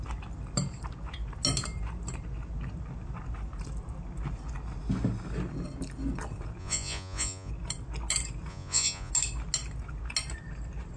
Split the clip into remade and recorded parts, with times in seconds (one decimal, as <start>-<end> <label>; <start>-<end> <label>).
0.0-6.6 recorded; 6.6-7.5 remade; 7.5-8.5 recorded; 8.5-9.1 remade; 9.1-11.0 recorded